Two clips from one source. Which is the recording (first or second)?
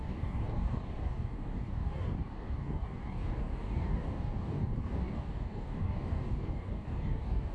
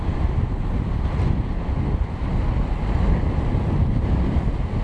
second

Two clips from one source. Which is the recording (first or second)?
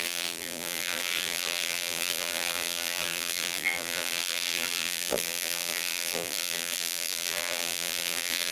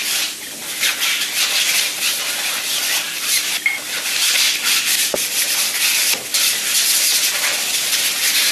second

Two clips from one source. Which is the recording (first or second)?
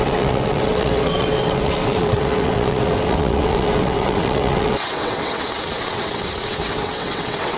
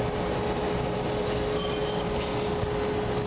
second